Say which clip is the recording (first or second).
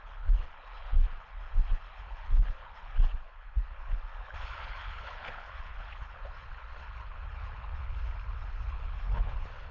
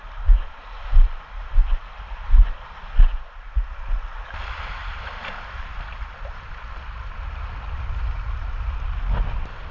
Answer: second